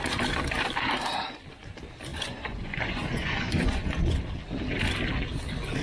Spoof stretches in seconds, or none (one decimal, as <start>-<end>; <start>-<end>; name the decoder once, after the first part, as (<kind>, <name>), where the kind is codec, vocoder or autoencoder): 2.1-4.2 (vocoder, Vocos)